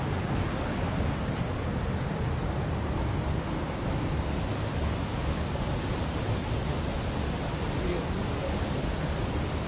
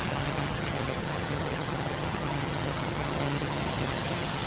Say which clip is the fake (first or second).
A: second